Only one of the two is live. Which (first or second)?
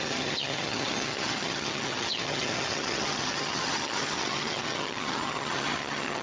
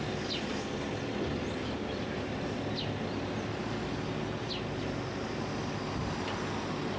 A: second